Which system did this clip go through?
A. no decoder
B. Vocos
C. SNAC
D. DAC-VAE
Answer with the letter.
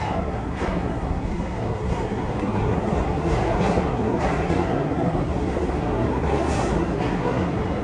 C